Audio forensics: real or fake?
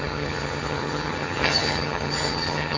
fake